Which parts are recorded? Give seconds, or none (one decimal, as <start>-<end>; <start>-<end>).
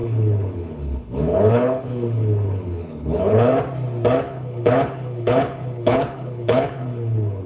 3.5-4.2